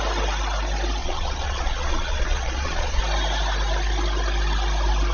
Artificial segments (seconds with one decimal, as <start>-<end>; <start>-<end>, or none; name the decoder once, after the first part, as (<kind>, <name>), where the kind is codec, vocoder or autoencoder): 1.0-3.0 (vocoder, Vocos)